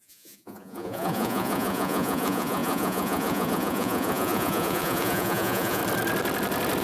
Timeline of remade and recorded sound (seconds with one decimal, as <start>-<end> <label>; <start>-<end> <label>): 0.0-5.8 remade; 5.8-6.8 recorded